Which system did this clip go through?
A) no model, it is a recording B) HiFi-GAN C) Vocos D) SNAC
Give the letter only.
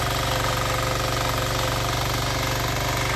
A